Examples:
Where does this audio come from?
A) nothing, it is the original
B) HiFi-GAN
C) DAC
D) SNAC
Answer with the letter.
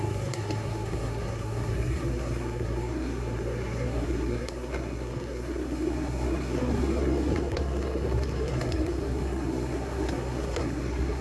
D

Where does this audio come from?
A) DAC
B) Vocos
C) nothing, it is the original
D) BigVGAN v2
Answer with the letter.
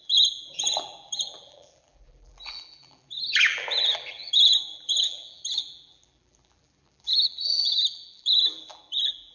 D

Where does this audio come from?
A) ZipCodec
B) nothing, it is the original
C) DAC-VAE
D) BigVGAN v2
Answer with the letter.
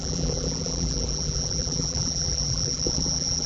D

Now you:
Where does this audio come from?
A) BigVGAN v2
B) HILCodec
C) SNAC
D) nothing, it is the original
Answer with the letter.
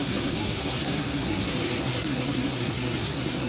C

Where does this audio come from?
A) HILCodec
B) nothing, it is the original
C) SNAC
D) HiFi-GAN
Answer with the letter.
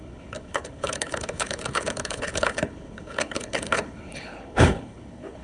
A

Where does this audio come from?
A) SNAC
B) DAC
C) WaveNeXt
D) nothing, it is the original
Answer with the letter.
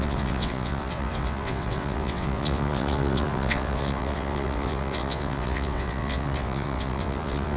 C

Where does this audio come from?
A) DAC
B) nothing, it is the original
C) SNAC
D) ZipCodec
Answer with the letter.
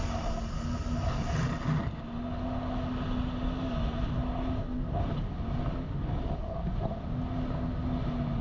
B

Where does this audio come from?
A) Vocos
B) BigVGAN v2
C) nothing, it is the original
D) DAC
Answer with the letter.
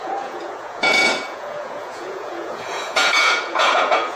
A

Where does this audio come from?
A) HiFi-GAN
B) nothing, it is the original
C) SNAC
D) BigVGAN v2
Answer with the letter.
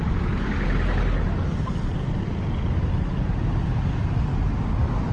B